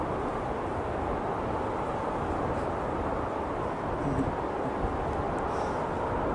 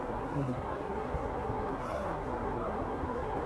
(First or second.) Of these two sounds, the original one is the first